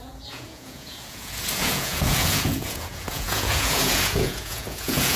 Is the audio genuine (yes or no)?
no